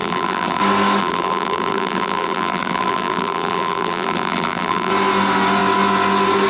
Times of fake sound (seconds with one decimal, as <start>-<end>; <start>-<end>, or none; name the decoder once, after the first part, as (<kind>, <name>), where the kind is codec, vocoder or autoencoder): 0.0-0.6 (vocoder, BigVGAN v2); 1.0-4.9